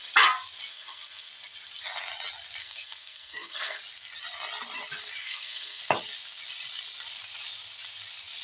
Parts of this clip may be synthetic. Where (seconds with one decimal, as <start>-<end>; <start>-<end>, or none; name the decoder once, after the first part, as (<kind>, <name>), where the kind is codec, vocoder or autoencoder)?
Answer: 0.7-1.3 (codec, SNAC); 2.6-3.8; 5.2-5.8